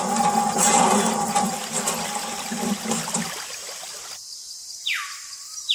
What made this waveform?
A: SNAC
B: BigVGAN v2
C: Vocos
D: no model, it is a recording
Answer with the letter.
D